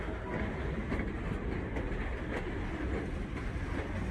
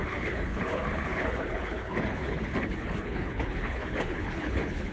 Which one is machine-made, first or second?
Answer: second